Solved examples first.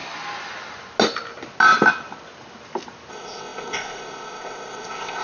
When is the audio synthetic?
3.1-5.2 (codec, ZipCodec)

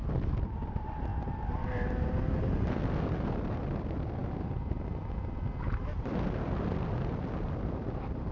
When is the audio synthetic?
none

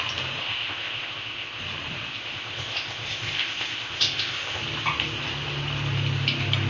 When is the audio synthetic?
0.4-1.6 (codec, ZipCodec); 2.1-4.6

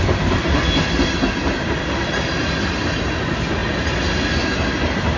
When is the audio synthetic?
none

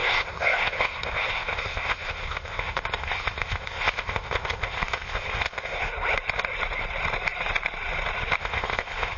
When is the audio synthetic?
0.0-5.9 (codec, ZipCodec); 8.4-9.2